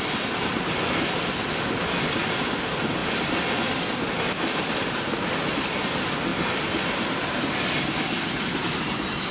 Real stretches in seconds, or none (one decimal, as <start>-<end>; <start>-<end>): 0.0-9.3